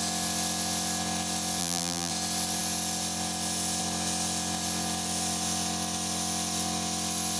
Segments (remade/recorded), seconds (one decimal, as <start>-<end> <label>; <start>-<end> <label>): 0.0-1.6 recorded; 1.6-2.1 remade; 2.1-7.4 recorded